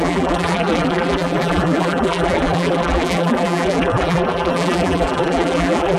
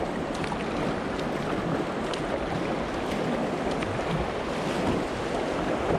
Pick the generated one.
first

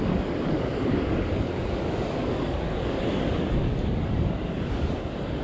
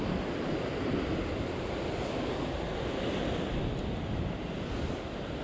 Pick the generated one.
first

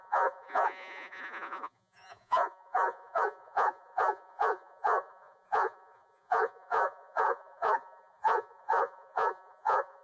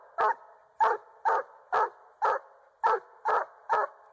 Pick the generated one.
first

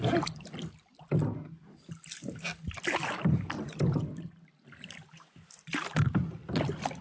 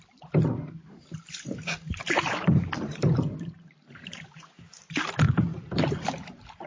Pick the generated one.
second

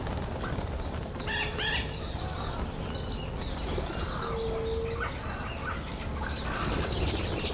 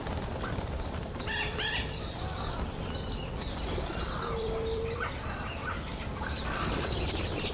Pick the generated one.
second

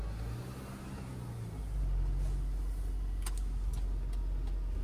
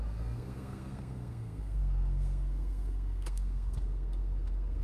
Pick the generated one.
second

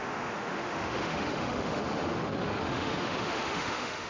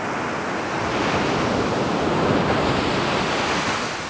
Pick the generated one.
first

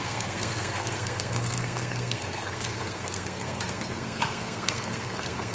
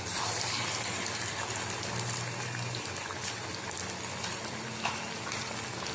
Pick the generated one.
first